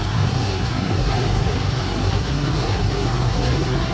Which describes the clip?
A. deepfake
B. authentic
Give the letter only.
A